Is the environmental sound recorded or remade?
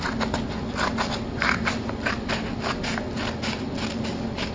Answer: recorded